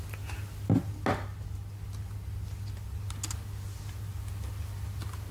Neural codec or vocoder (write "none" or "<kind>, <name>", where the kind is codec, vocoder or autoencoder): none